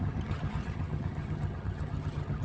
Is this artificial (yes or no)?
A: yes